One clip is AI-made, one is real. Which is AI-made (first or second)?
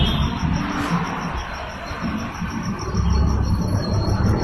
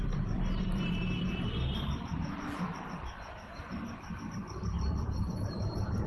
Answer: second